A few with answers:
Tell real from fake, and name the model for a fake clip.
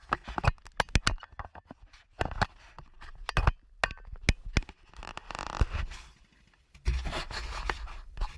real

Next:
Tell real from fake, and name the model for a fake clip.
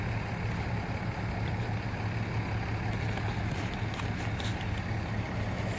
real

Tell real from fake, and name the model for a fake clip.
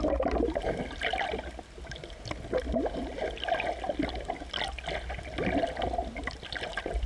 real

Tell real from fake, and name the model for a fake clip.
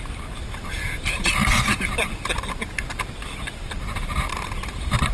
real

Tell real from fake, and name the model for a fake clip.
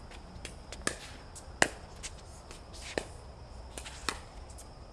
real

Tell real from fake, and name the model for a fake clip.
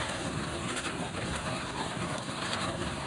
fake, codec, SNAC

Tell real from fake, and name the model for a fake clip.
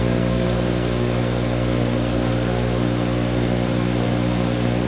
fake, codec, SNAC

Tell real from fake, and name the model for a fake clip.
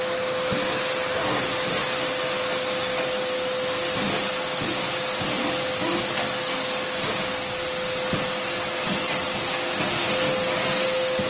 real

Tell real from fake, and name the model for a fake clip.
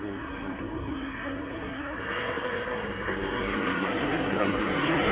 fake, codec, SNAC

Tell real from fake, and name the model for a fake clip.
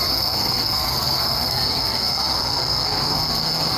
fake, codec, SNAC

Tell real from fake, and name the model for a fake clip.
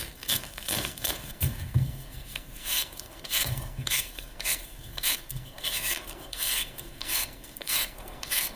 fake, codec, SNAC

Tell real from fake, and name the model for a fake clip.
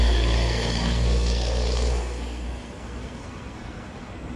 fake, codec, SNAC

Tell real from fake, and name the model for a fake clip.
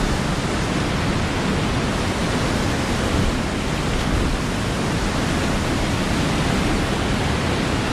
real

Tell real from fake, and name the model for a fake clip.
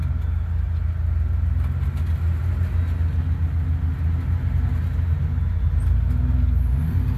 real